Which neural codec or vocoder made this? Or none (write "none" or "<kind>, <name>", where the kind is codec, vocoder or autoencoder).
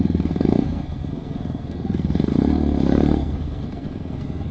codec, SNAC